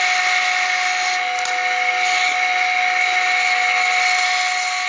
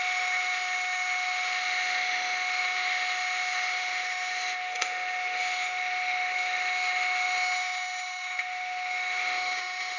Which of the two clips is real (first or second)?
first